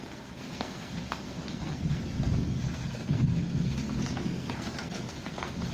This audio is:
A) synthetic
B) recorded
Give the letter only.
A